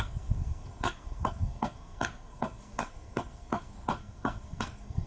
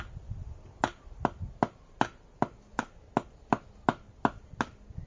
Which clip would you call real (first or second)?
second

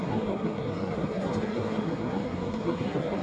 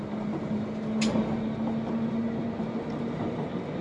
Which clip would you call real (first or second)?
second